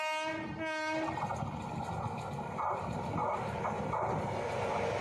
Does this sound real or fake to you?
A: real